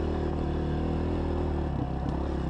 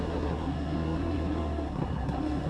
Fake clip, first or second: second